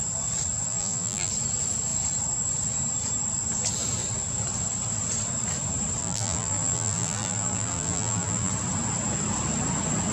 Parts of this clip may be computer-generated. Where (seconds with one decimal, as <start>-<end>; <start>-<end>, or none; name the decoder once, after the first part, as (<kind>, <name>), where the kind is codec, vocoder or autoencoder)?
0.7-1.3 (vocoder, BigVGAN v2); 6.0-8.5